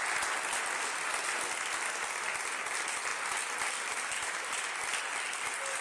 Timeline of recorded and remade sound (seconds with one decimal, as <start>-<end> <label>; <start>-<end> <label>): 0.0-5.8 recorded

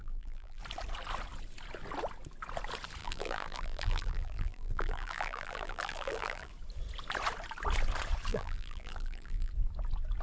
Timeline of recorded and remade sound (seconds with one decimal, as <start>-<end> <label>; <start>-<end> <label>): 0.0-0.6 remade; 0.6-3.0 recorded; 3.0-6.5 remade; 6.5-8.3 recorded; 8.3-9.5 remade; 9.5-10.2 recorded

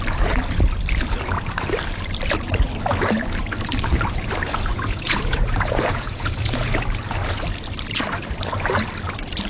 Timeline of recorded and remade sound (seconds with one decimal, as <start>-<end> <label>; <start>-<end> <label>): 0.0-4.7 recorded; 4.7-6.7 remade; 6.7-9.5 recorded

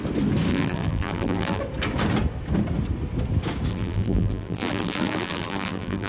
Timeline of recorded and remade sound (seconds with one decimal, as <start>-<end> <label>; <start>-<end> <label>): 0.0-0.5 recorded; 0.5-1.6 remade; 1.6-3.7 recorded; 3.7-6.1 remade

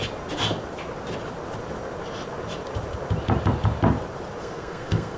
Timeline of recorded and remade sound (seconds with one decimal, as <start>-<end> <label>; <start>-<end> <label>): 0.0-4.4 recorded; 4.4-5.2 remade

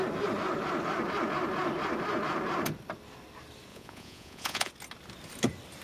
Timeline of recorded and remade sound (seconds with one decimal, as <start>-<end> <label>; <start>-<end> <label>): 0.0-3.7 recorded; 3.7-4.7 remade; 4.7-5.8 recorded

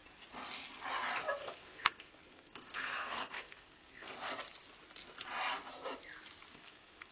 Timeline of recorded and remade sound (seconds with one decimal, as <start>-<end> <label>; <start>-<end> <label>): 0.0-1.4 recorded; 1.4-4.1 remade; 4.1-6.5 recorded; 6.5-7.1 remade